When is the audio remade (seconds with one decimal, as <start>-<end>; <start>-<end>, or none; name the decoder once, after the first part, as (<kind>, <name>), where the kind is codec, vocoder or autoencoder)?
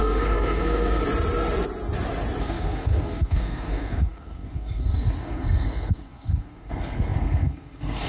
0.0-1.0 (codec, SNAC); 2.4-8.1